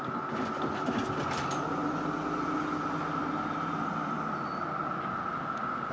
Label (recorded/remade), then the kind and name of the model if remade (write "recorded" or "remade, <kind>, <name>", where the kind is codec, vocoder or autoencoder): recorded